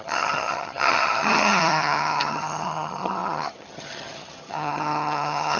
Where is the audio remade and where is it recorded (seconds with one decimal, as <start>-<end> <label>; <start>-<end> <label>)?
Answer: 0.0-5.6 remade